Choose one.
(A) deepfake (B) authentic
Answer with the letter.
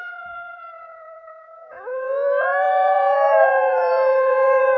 A